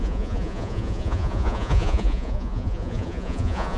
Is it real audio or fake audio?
fake